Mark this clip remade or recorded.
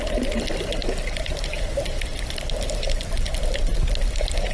recorded